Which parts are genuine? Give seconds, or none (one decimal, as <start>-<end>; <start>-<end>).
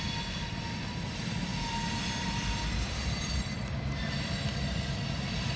none